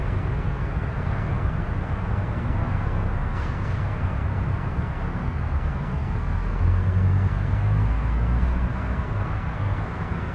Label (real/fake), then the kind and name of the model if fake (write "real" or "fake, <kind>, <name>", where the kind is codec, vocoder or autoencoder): fake, codec, SNAC